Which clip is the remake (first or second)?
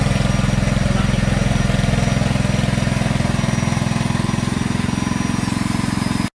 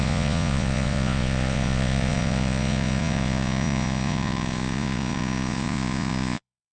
second